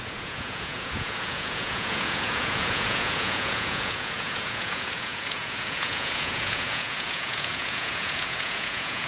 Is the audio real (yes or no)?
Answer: no